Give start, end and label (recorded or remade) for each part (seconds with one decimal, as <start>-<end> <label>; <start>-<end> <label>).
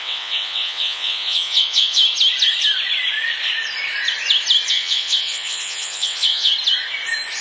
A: 0.0-2.0 remade; 2.0-4.7 recorded; 4.7-6.5 remade; 6.5-7.4 recorded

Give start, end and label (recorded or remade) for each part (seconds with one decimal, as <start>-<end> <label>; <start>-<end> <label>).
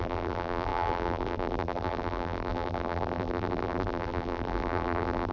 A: 0.0-5.3 remade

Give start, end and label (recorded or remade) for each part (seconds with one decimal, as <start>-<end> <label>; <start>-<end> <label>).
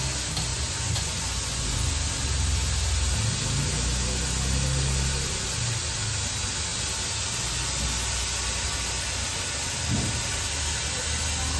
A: 0.0-0.5 recorded; 0.5-1.9 remade; 1.9-11.6 recorded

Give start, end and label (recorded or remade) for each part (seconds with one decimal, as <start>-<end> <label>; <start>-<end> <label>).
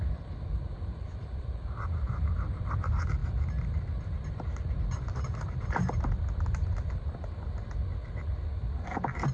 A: 0.0-9.3 recorded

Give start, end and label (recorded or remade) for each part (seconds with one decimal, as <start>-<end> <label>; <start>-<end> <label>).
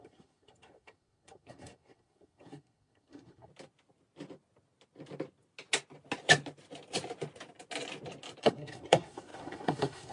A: 0.0-3.5 remade; 3.5-8.4 recorded; 8.4-10.1 remade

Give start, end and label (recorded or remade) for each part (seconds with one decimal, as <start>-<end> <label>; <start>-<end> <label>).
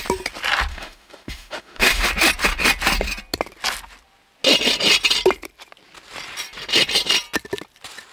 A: 0.0-0.7 recorded; 0.7-2.1 remade; 2.1-8.1 recorded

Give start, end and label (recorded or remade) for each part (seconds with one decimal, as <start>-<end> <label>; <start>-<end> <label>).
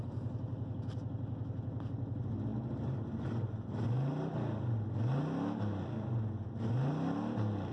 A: 0.0-7.7 recorded